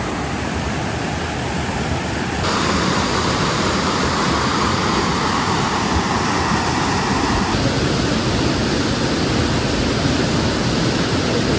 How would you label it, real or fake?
real